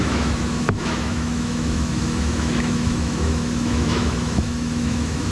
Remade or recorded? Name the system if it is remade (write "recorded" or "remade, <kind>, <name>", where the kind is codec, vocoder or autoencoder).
remade, autoencoder, DAC-VAE